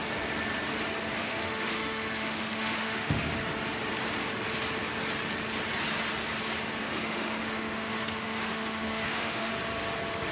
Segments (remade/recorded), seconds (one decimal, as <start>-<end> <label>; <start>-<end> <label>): 0.0-1.2 recorded; 1.2-3.3 remade; 3.3-6.8 recorded; 6.8-9.5 remade; 9.5-10.3 recorded

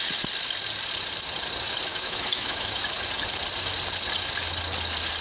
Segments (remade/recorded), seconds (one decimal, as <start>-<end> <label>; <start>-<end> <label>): 0.0-1.9 recorded; 1.9-2.8 remade; 2.8-5.2 recorded

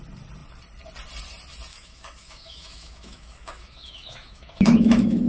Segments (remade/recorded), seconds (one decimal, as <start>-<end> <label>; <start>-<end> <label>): 0.0-1.7 recorded; 1.7-5.3 remade